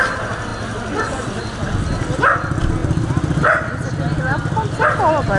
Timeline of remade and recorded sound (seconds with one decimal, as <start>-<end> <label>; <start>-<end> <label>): 0.0-2.8 recorded; 2.8-3.4 remade; 3.4-5.4 recorded